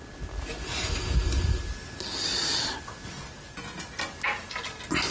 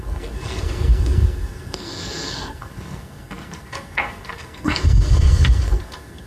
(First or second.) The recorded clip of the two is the first